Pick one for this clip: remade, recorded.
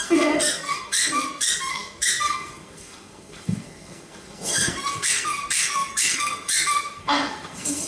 remade